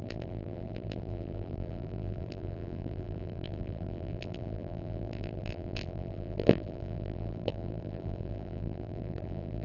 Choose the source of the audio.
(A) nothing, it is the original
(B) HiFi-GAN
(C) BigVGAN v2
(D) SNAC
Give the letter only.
C